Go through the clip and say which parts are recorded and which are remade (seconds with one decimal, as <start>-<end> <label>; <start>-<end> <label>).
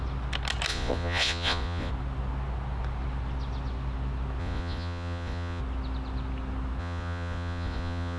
0.0-0.7 recorded; 0.7-1.9 remade; 1.9-4.4 recorded; 4.4-5.6 remade; 5.6-6.8 recorded; 6.8-8.2 remade